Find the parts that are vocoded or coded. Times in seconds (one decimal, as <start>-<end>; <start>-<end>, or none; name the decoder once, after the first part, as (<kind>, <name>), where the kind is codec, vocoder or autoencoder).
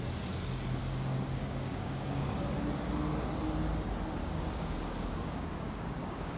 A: 0.8-2.5 (codec, DAC); 4.2-6.4